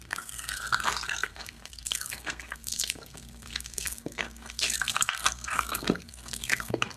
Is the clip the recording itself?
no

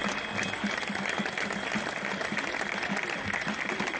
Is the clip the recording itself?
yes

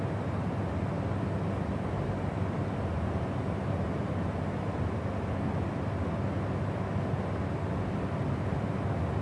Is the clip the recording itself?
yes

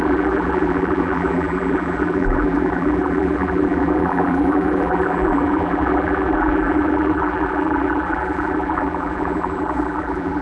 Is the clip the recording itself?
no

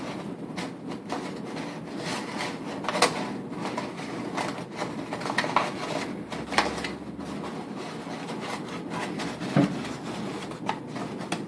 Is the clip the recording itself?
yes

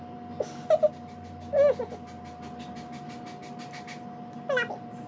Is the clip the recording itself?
yes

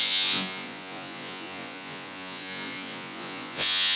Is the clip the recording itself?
no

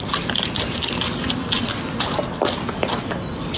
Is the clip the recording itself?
yes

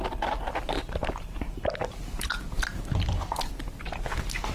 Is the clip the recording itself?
yes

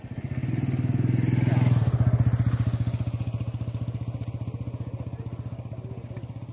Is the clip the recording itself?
yes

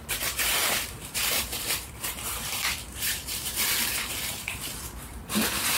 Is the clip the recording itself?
no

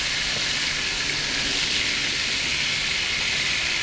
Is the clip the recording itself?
yes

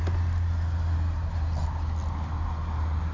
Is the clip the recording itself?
yes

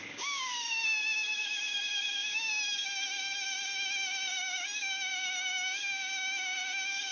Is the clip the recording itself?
no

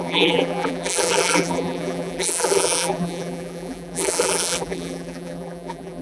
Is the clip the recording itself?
no